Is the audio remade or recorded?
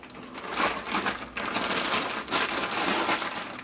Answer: recorded